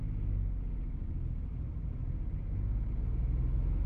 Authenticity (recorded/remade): recorded